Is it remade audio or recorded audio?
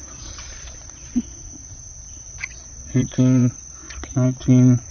remade